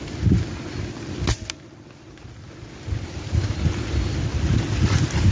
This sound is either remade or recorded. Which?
recorded